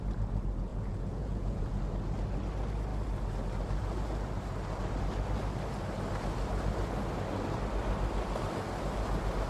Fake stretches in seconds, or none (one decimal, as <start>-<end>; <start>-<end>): 0.7-1.8

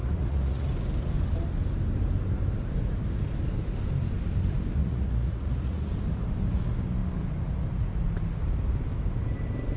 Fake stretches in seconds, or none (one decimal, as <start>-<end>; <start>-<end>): 0.0-0.7; 4.8-5.9